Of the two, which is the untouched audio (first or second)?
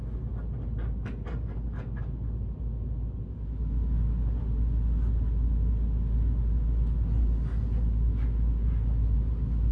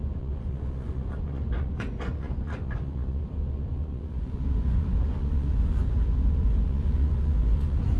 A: first